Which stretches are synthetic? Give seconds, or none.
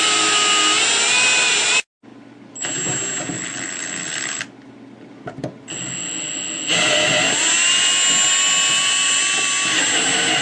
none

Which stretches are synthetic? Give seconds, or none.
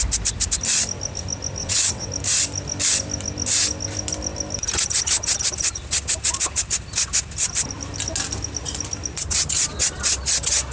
1.6-2.1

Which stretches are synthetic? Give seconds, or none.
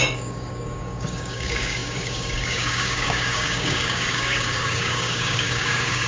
0.0-6.1